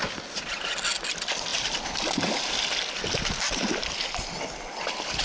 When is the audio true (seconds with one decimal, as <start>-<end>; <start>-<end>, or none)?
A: 0.0-5.2